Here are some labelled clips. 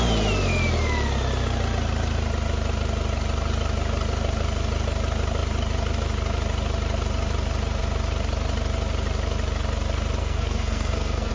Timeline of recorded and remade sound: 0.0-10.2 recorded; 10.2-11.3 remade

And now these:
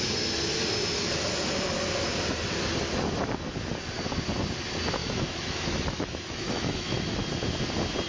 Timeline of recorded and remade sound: 0.0-5.0 recorded; 5.0-7.1 remade; 7.1-8.1 recorded

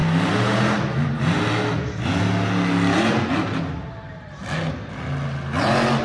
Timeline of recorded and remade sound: 0.0-6.0 recorded

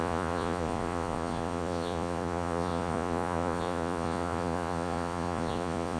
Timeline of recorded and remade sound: 0.0-6.0 remade

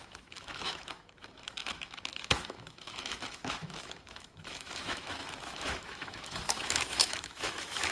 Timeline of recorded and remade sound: 0.0-7.9 remade